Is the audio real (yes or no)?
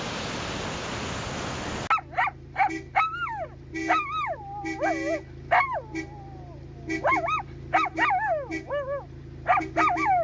yes